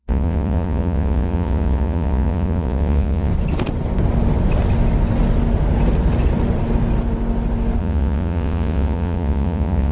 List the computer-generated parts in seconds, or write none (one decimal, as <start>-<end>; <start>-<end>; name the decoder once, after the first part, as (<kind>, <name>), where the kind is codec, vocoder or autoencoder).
0.0-3.3 (vocoder, Vocos); 7.8-9.9